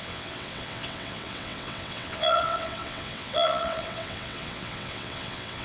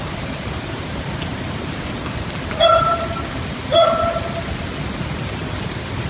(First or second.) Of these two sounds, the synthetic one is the first